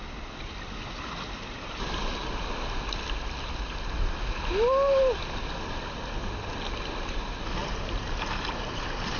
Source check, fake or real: real